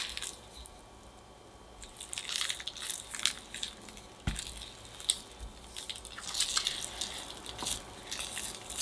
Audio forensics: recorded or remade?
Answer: recorded